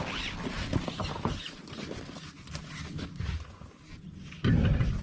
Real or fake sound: real